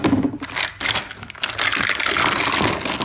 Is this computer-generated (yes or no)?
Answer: no